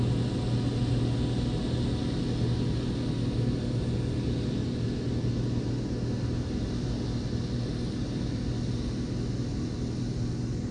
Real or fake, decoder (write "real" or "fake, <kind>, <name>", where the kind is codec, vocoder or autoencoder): real